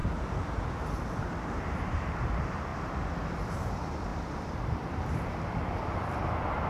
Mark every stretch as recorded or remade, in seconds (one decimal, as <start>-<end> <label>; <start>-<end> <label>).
0.0-1.4 recorded; 1.4-2.7 remade; 2.7-3.3 recorded; 3.3-4.1 remade; 4.1-4.6 recorded; 4.6-6.7 remade